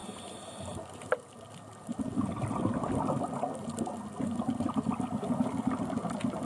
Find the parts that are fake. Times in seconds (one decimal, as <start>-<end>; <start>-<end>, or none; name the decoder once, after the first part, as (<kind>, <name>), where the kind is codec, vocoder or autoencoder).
none